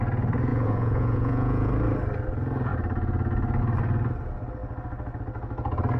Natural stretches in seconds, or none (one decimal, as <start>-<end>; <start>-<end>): 0.0-0.5; 1.7-6.0